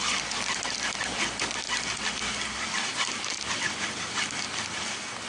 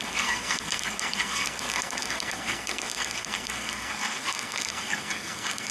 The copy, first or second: second